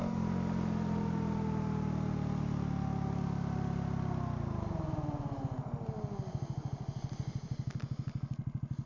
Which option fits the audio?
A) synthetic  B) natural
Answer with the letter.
B